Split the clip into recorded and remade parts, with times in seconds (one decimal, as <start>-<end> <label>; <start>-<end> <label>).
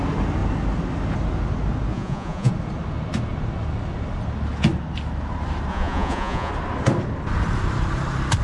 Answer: 0.0-1.9 recorded; 1.9-2.5 remade; 2.5-5.7 recorded; 5.7-6.5 remade; 6.5-8.4 recorded